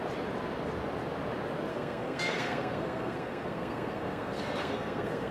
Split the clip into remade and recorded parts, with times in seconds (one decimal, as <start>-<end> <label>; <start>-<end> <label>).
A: 0.0-1.7 recorded; 1.7-5.3 remade